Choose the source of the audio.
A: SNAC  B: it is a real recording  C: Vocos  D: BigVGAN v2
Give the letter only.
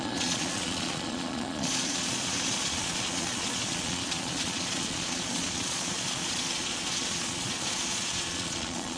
C